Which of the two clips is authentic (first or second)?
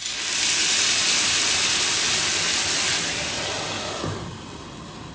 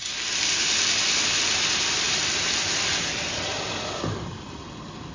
first